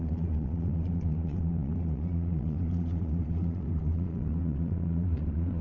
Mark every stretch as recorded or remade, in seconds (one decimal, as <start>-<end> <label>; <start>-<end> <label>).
0.0-5.6 remade